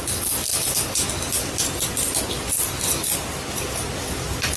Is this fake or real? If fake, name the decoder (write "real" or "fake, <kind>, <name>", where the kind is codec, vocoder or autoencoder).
real